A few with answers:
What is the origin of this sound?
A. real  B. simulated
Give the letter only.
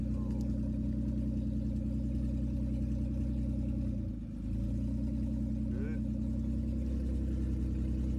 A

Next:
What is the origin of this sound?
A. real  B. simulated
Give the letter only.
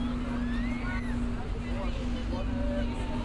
A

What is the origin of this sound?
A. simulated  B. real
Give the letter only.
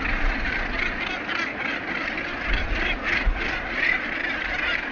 B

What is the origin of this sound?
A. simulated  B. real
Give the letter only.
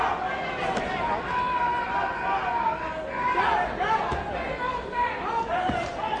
B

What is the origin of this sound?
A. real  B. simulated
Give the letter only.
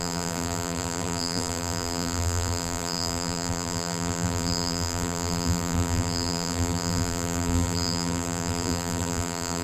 B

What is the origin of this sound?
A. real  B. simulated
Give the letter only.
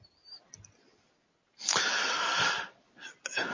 A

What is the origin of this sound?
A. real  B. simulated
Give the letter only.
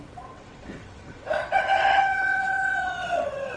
B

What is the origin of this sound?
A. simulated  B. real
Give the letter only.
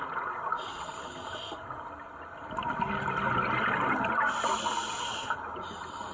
B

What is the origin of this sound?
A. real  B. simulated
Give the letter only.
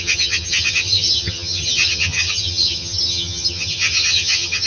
B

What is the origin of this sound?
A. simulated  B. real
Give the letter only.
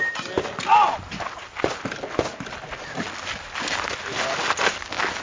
B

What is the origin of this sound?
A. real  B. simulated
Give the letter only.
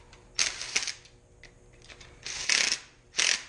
A